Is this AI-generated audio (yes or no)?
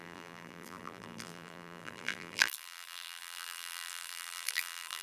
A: yes